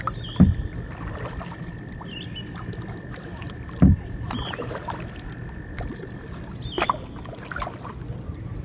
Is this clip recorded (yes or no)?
yes